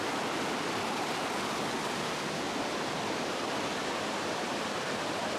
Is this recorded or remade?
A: recorded